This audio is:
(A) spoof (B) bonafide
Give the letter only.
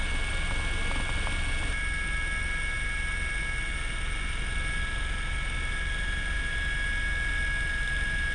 B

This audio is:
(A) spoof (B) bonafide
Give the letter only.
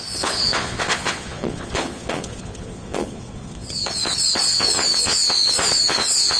A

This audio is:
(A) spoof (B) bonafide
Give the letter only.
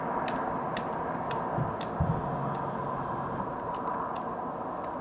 B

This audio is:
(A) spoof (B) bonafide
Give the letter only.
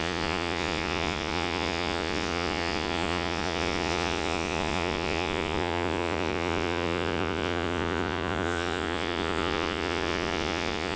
A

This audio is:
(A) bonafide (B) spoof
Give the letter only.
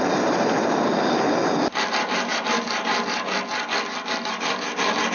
A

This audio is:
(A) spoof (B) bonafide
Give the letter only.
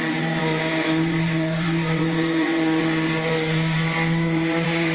A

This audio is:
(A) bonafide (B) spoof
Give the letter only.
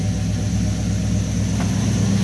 A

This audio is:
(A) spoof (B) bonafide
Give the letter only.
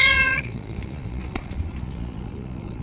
A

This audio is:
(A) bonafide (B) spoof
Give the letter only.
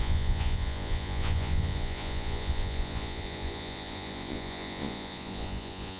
B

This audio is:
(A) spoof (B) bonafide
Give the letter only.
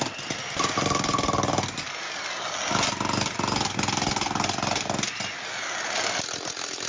B